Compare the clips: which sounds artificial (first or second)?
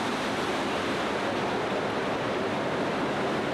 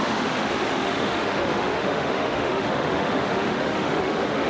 second